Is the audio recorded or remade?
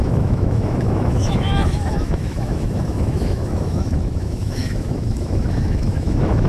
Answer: remade